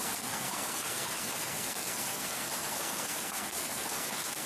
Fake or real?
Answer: fake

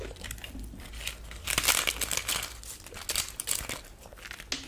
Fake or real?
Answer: real